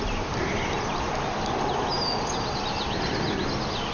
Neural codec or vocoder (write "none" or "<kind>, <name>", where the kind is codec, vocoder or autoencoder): none